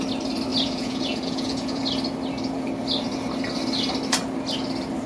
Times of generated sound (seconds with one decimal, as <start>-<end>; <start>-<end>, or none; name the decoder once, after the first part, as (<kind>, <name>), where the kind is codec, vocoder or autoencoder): 0.5-1.8 (vocoder, Vocos)